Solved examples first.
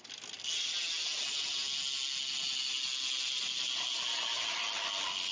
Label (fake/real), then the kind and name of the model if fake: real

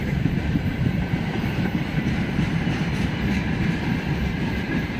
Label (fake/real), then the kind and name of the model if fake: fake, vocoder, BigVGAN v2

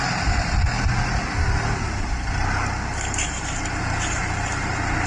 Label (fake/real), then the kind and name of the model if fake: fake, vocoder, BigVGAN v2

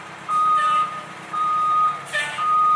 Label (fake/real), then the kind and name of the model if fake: fake, vocoder, BigVGAN v2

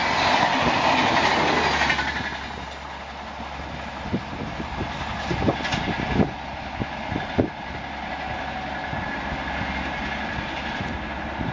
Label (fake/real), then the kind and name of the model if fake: real